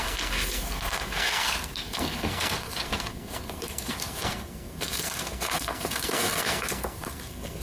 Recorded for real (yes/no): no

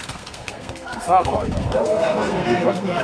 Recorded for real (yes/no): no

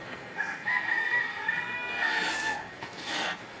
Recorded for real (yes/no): no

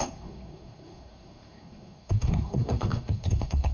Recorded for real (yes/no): no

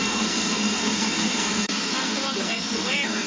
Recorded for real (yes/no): no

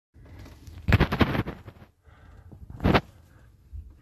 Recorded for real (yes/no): yes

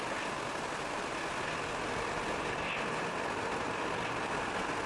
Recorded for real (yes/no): yes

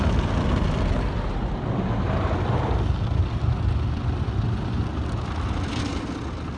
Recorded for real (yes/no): yes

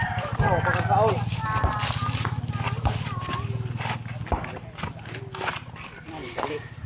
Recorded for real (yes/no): yes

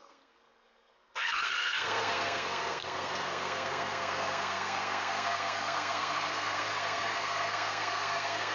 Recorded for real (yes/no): no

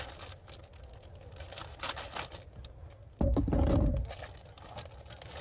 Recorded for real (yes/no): yes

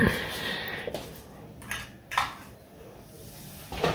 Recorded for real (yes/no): yes